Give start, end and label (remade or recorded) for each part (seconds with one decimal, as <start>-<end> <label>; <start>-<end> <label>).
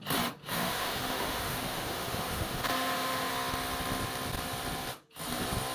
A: 0.0-0.4 recorded; 0.4-3.3 remade; 3.3-5.7 recorded